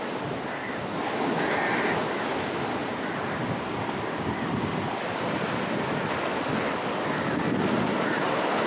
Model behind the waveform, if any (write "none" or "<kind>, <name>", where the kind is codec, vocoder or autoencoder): none